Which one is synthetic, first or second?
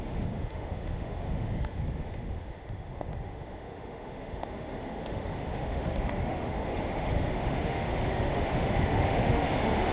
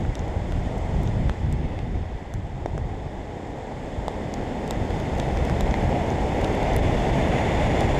first